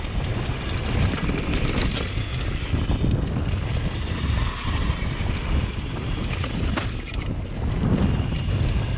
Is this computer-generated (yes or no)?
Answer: no